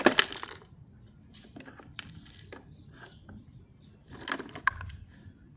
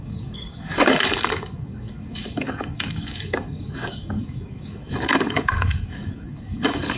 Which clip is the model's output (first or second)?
second